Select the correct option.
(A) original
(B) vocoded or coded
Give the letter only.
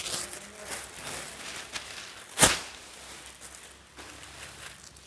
A